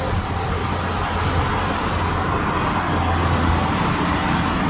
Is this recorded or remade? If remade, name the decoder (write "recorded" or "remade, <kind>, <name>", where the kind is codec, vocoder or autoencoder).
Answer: recorded